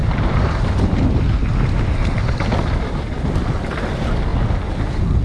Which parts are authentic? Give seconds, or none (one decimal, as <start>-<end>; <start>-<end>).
0.7-5.2